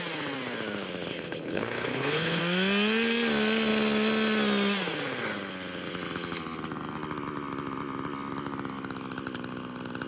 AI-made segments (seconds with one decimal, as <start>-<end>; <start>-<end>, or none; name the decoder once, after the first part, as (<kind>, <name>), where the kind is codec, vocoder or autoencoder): 1.1-2.4 (codec, HILCodec)